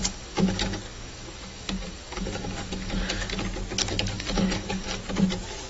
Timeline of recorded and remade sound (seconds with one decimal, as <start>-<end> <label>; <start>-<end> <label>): 0.0-3.4 remade; 3.4-3.8 recorded; 3.8-5.0 remade; 5.0-5.7 recorded